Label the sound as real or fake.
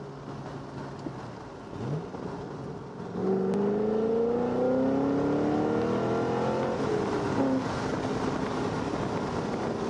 real